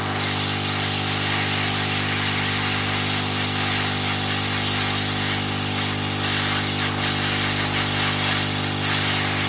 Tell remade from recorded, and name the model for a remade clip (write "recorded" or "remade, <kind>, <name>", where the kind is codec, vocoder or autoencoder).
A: recorded